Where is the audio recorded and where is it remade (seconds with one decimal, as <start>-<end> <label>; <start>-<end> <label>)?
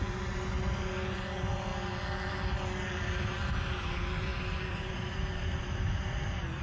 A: 0.0-1.7 remade; 1.7-2.9 recorded; 2.9-6.6 remade